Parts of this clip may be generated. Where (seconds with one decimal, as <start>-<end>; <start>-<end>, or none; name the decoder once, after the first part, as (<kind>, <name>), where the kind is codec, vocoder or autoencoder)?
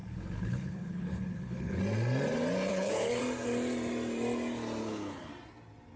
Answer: 0.0-1.8 (codec, HILCodec); 2.7-3.2; 4.8-5.3